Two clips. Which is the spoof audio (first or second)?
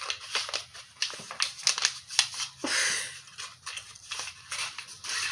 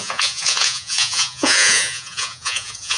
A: second